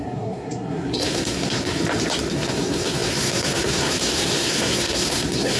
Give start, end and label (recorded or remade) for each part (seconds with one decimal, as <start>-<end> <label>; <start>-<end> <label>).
0.0-1.8 remade; 1.8-2.3 recorded; 2.3-5.6 remade